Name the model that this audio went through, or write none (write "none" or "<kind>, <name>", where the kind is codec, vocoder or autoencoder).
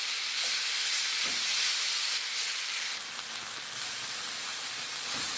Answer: none